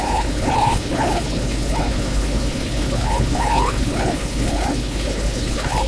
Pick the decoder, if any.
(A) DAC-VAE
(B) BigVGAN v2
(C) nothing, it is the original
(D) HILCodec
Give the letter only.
D